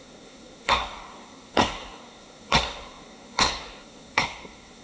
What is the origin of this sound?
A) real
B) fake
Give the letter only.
B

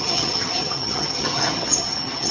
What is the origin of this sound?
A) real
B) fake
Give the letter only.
B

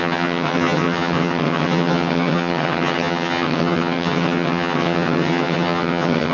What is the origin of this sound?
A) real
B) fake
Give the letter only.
B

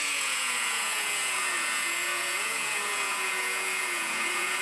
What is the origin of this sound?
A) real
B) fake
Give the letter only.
B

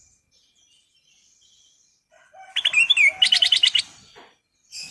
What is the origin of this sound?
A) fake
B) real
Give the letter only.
B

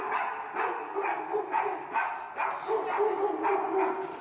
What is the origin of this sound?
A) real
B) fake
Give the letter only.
A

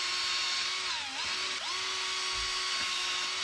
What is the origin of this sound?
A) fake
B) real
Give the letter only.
B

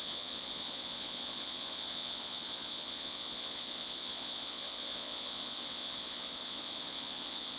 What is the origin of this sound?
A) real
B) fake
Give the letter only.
B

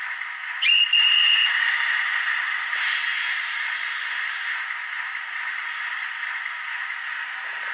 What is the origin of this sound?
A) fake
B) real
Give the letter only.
B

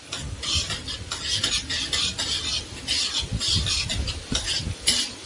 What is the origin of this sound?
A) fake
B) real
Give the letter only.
B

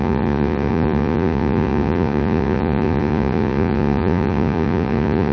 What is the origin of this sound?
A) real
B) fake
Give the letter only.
B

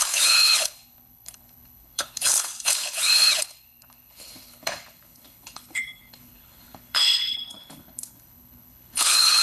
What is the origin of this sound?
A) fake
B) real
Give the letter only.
A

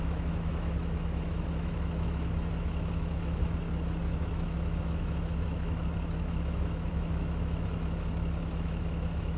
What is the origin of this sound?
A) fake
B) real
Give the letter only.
A